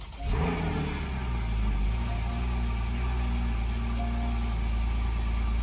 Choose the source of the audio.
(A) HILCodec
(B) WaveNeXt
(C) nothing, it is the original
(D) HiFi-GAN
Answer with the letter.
C